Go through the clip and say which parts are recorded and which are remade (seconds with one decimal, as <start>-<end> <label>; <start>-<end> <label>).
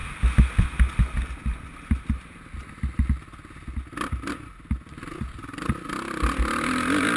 0.0-7.2 recorded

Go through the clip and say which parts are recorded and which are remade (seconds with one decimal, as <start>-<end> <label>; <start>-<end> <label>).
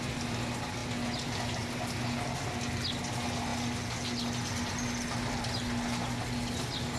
0.0-3.5 recorded; 3.5-7.0 remade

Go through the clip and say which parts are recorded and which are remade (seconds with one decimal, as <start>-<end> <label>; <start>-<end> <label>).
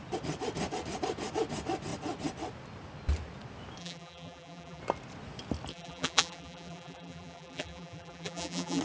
0.0-3.8 recorded; 3.8-4.8 remade; 4.8-5.7 recorded; 5.7-8.8 remade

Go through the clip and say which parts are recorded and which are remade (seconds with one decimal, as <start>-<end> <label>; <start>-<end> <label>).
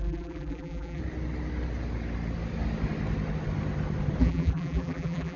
0.0-1.0 remade; 1.0-4.2 recorded; 4.2-5.4 remade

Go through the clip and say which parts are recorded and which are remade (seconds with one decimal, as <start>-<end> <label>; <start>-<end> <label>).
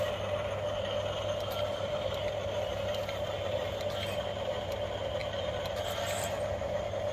0.0-5.2 recorded; 5.2-6.3 remade; 6.3-7.1 recorded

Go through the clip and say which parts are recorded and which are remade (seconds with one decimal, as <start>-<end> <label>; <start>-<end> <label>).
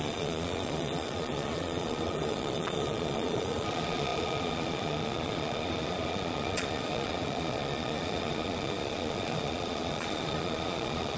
0.0-11.2 remade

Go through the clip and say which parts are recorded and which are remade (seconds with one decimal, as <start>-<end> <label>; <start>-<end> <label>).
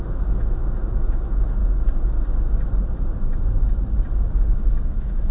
0.0-1.6 remade; 1.6-4.8 recorded; 4.8-5.3 remade